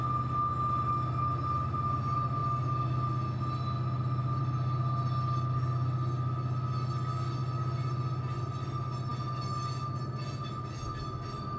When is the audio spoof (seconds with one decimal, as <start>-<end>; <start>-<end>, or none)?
none